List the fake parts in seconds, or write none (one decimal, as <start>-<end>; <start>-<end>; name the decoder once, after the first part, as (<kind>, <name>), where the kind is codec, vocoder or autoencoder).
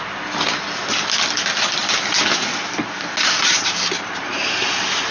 none